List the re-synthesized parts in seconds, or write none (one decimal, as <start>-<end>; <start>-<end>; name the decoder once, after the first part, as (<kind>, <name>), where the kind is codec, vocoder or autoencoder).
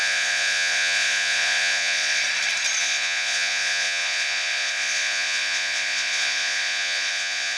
0.0-2.2 (vocoder, Vocos); 2.8-7.6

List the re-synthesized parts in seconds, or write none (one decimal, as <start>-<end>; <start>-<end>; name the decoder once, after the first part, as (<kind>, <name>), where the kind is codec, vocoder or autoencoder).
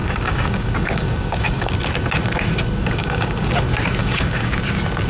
0.0-1.7 (codec, DAC); 2.8-3.5; 4.0-4.5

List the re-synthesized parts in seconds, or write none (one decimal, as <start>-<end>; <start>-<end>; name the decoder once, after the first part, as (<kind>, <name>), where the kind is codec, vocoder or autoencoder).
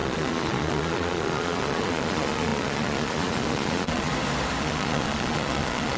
0.0-4.1 (vocoder, Vocos); 4.6-6.0